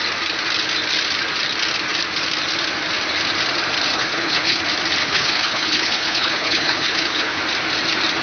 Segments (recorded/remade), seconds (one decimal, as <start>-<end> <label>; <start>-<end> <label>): 0.0-3.9 recorded; 3.9-4.6 remade; 4.6-5.0 recorded; 5.0-7.4 remade; 7.4-8.2 recorded